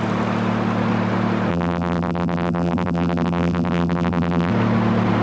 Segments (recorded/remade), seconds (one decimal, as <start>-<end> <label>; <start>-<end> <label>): 0.0-1.5 recorded; 1.5-4.5 remade; 4.5-5.2 recorded